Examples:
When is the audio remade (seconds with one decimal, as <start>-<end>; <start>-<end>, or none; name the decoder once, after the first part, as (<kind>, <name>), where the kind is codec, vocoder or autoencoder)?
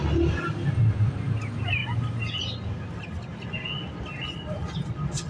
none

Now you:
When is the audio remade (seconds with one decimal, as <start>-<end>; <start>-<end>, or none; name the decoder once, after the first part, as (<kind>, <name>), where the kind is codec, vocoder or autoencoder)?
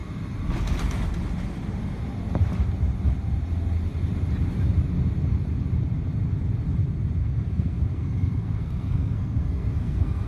7.2-10.3 (codec, SNAC)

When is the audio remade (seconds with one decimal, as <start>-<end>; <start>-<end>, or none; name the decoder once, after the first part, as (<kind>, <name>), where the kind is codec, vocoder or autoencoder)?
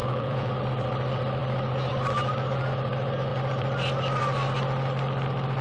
0.0-0.5 (vocoder, Vocos)